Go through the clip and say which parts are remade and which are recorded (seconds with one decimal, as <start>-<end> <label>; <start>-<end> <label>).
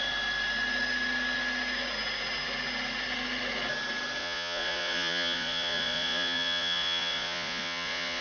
0.0-4.2 recorded; 4.2-8.2 remade